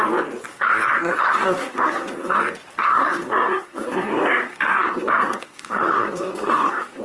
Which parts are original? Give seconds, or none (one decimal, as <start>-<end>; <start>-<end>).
0.0-0.5; 2.4-2.8